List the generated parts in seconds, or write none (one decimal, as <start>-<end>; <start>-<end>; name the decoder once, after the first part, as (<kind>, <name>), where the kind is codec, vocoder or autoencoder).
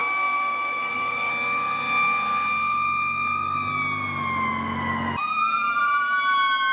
0.0-1.3 (codec, SNAC)